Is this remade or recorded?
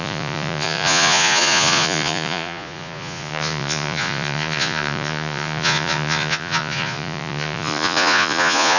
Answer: remade